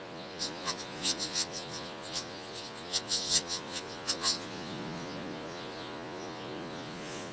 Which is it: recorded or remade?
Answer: remade